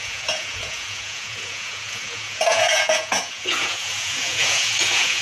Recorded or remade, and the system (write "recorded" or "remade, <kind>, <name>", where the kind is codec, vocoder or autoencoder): remade, vocoder, Vocos